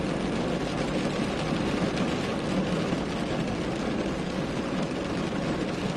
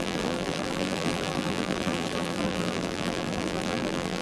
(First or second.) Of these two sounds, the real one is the first